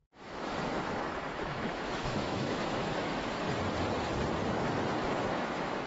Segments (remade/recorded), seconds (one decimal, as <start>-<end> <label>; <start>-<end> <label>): 0.0-3.5 remade; 3.5-5.0 recorded; 5.0-5.9 remade